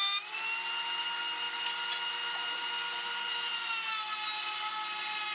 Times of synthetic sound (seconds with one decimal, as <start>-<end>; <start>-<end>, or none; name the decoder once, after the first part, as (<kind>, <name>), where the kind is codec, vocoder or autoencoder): none